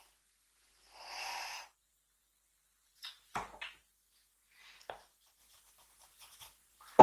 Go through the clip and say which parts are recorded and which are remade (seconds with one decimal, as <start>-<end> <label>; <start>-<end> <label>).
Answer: 0.0-1.3 recorded; 1.3-1.9 remade; 1.9-5.4 recorded; 5.4-7.0 remade